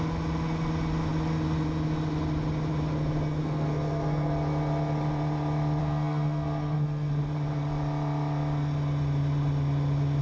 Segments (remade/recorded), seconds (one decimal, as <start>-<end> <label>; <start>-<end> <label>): 0.0-3.4 recorded; 3.4-4.3 remade; 4.3-5.8 recorded; 5.8-7.1 remade; 7.1-10.2 recorded